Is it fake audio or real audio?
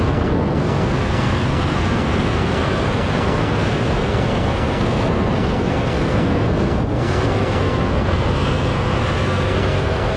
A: fake